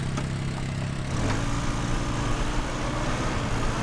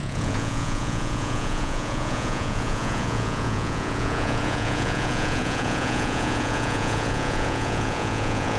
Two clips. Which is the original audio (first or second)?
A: first